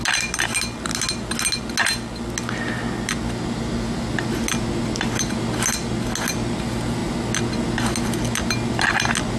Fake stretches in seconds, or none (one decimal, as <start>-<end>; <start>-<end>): none